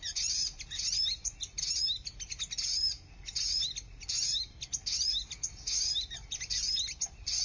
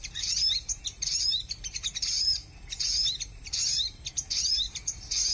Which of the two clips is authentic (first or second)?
first